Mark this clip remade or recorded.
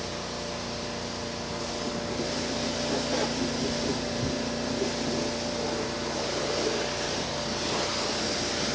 recorded